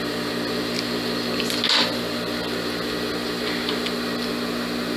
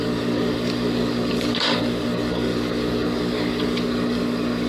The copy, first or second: second